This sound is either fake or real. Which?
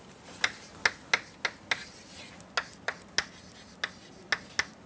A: real